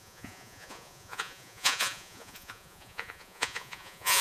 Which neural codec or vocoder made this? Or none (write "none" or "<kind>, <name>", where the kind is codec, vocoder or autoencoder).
vocoder, Vocos